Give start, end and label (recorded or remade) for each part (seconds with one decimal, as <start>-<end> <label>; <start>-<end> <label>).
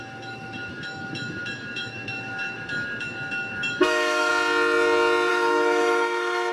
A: 0.0-4.3 remade; 4.3-5.3 recorded; 5.3-6.5 remade